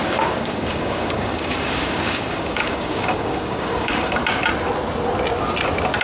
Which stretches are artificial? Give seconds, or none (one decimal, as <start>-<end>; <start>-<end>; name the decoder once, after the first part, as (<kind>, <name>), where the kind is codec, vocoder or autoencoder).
0.0-4.2 (codec, DAC)